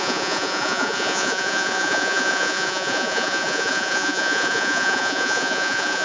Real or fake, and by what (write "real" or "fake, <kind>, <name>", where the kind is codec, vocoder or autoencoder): fake, vocoder, Vocos